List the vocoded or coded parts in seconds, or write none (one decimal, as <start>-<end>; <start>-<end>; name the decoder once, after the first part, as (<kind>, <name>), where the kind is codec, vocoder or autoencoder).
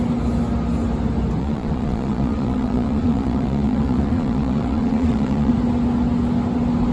1.4-5.5 (vocoder, Vocos)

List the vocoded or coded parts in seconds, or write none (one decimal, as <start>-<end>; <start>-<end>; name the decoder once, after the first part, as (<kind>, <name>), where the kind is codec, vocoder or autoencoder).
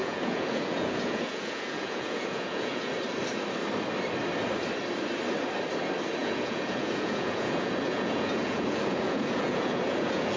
0.0-2.9 (vocoder, Vocos); 6.2-10.4